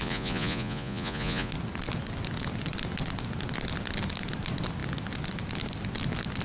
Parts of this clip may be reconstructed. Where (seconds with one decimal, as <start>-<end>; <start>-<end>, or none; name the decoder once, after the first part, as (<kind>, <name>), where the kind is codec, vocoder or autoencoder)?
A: 0.0-1.5 (vocoder, Vocos)